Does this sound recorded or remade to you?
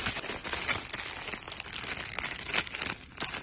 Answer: recorded